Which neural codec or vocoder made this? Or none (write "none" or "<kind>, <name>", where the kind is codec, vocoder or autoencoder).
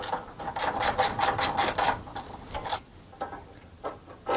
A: none